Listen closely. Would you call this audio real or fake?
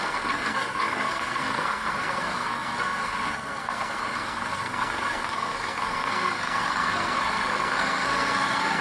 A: fake